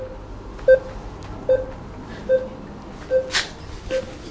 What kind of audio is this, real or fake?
real